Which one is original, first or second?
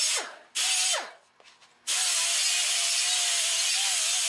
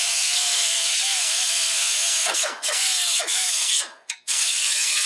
first